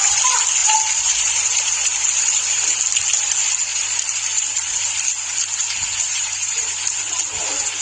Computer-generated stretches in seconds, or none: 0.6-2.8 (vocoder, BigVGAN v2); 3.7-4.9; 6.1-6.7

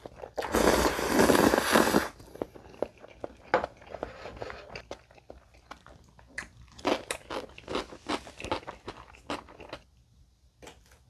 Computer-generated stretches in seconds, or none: 5.5-8.2 (vocoder, BigVGAN v2)

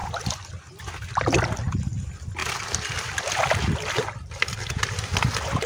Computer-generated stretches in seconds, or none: 0.0-0.8 (vocoder, BigVGAN v2); 2.4-4.9

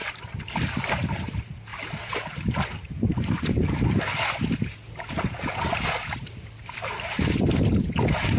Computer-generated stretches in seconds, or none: 1.7-3.7 (vocoder, BigVGAN v2)